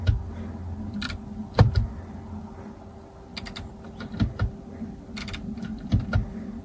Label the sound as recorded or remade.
recorded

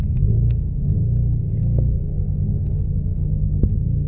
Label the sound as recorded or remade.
remade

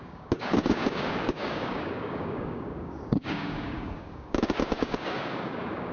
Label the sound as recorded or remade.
remade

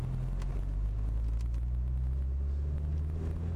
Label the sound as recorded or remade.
recorded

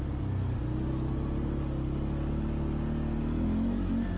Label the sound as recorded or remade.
recorded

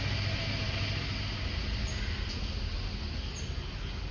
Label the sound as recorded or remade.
recorded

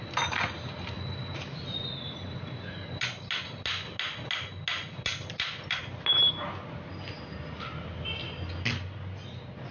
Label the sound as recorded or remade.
recorded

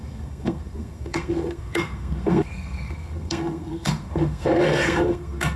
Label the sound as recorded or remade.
remade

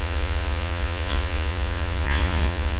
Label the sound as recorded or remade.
remade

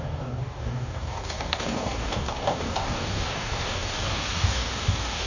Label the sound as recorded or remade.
remade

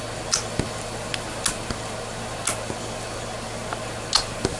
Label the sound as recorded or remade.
recorded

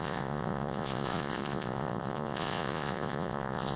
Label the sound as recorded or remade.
remade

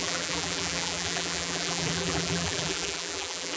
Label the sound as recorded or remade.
remade